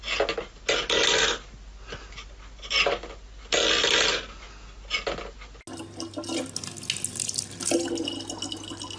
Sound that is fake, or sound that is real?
real